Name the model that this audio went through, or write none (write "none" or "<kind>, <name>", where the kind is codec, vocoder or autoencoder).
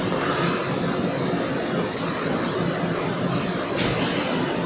none